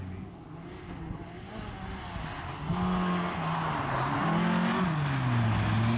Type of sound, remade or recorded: recorded